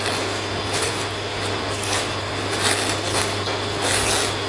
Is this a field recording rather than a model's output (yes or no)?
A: yes